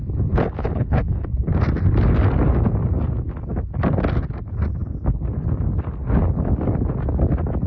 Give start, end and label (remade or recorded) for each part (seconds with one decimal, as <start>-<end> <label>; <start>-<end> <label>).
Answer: 0.0-0.6 recorded; 0.6-1.5 remade; 1.5-7.7 recorded